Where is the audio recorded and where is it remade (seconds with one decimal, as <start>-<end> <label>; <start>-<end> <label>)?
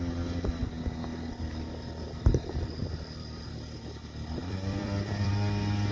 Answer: 0.0-2.8 recorded; 2.8-3.4 remade; 3.4-4.4 recorded; 4.4-5.3 remade; 5.3-5.9 recorded